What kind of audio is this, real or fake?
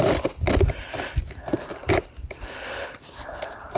real